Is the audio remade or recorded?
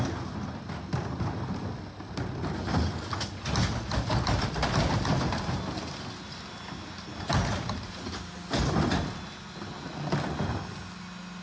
recorded